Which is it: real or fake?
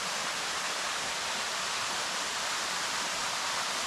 fake